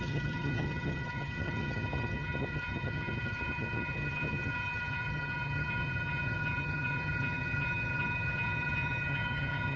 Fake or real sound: fake